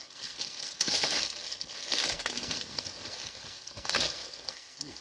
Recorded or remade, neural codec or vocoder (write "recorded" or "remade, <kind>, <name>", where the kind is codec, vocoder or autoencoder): remade, codec, SNAC